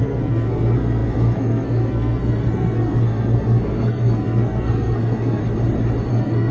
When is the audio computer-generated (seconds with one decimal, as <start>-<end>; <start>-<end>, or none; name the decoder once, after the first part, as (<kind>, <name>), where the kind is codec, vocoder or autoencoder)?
0.0-5.4 (codec, SNAC); 6.1-6.5